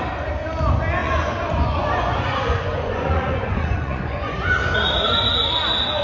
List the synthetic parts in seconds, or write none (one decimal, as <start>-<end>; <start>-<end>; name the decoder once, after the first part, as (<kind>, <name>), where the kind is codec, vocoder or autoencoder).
1.0-4.6 (vocoder, Vocos)